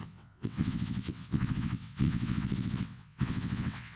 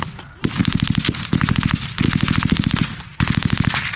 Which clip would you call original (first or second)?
second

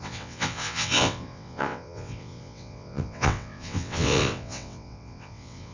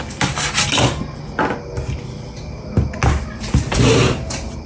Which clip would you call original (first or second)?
second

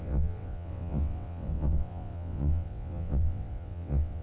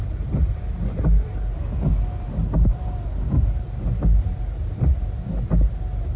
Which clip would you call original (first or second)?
second